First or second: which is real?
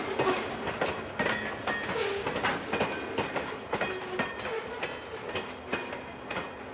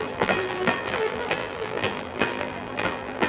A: first